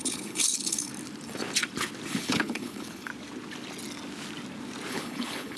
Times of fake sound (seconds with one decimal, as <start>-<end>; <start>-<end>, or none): 0.0-0.9; 2.1-3.1; 4.9-5.6